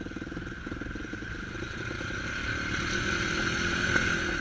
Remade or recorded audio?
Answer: recorded